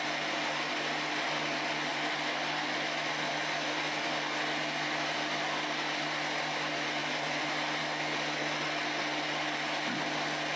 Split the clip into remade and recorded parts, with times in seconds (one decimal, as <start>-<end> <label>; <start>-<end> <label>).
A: 0.0-10.6 recorded